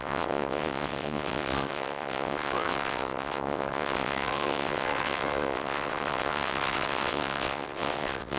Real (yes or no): no